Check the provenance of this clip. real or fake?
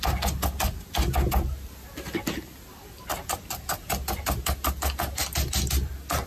real